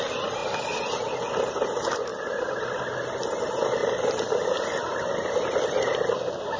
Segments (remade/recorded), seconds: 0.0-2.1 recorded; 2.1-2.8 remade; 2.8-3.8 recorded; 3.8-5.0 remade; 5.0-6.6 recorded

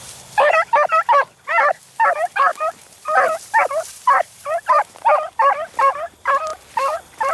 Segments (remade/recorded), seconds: 0.0-2.5 recorded; 2.5-5.9 remade; 5.9-6.5 recorded; 6.5-7.3 remade

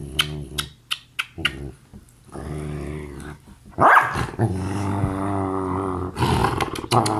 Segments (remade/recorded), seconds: 0.0-0.8 remade; 0.8-1.9 recorded; 1.9-5.0 remade; 5.0-7.2 recorded

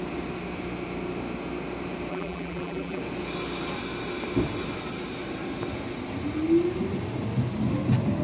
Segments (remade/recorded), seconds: 0.0-2.1 recorded; 2.1-3.0 remade; 3.0-8.2 recorded

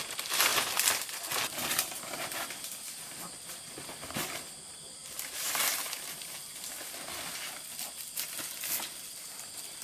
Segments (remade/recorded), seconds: 0.0-5.0 recorded; 5.0-5.8 remade; 5.8-9.8 recorded

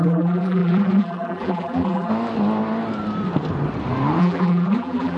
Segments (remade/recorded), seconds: 0.0-2.1 remade; 2.1-4.2 recorded; 4.2-5.2 remade